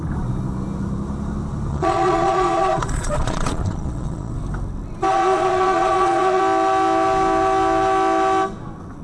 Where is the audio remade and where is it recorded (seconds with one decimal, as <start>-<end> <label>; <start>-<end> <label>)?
0.0-1.7 recorded; 1.7-4.3 remade; 4.3-5.1 recorded; 5.1-6.4 remade; 6.4-9.0 recorded